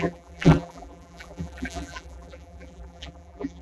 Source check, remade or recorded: remade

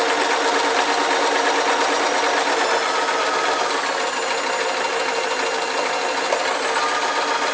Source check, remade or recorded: recorded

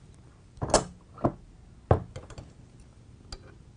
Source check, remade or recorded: recorded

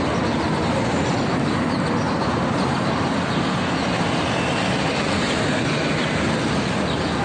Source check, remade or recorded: recorded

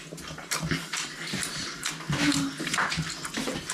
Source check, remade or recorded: remade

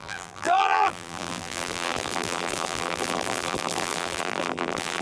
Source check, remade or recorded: remade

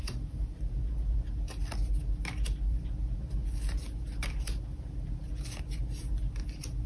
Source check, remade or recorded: recorded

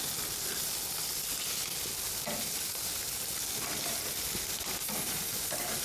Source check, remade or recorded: recorded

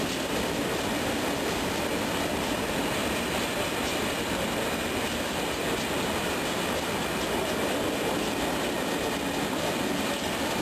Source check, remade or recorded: recorded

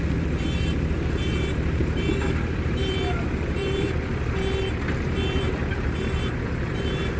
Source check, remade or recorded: remade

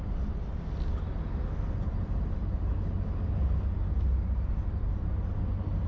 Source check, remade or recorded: recorded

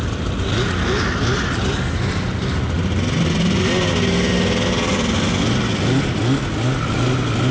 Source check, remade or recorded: recorded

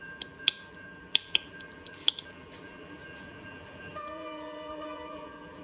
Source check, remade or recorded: remade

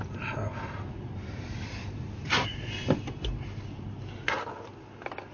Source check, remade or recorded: recorded